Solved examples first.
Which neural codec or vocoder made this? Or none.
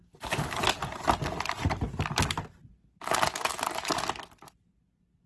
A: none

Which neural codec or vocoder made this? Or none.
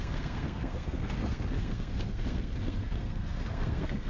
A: codec, SNAC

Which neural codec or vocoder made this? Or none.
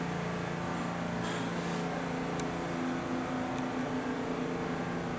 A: none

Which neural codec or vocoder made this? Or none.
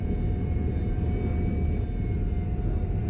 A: none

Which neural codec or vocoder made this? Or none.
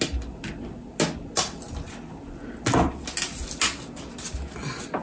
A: none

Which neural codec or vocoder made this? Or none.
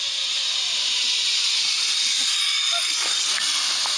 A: none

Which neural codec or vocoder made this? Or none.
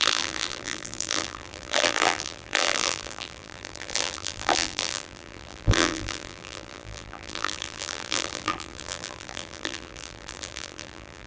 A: vocoder, BigVGAN v2